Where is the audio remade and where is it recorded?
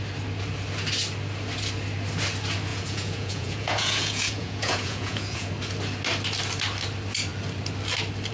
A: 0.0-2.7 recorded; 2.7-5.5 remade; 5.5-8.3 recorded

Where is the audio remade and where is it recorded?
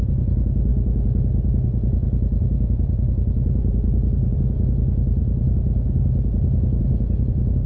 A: 0.0-7.7 recorded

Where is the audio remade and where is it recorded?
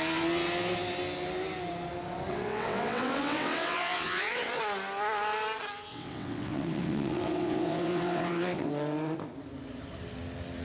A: 0.0-2.3 recorded; 2.3-4.6 remade; 4.6-5.9 recorded; 5.9-8.7 remade; 8.7-10.6 recorded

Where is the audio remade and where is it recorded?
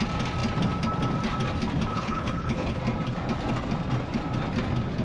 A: 0.0-1.9 recorded; 1.9-2.8 remade; 2.8-5.0 recorded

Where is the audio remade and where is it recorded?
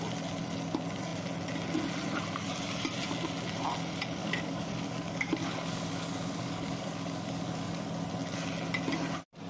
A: 0.0-4.2 recorded; 4.2-7.9 remade; 7.9-9.5 recorded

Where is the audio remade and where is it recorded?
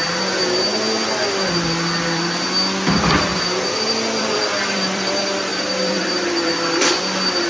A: 0.0-3.3 recorded; 3.3-5.1 remade; 5.1-5.5 recorded; 5.5-6.9 remade; 6.9-7.5 recorded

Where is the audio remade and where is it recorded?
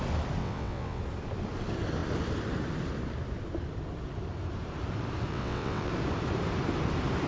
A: 0.0-0.4 recorded; 0.4-1.0 remade; 1.0-5.3 recorded; 5.3-5.9 remade; 5.9-7.3 recorded